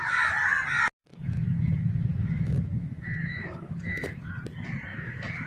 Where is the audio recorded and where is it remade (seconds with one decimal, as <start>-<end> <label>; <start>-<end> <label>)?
0.0-1.0 recorded; 1.0-4.3 remade; 4.3-4.9 recorded; 4.9-5.5 remade